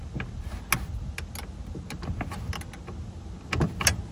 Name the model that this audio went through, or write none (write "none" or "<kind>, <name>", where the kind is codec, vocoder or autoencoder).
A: none